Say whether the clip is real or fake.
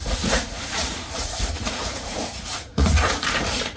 fake